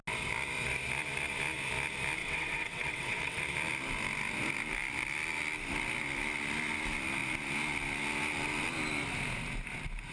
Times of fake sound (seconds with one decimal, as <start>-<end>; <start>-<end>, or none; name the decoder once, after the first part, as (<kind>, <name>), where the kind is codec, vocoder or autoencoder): 2.2-3.4 (vocoder, WaveNeXt)